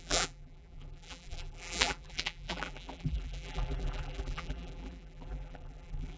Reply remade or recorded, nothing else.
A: remade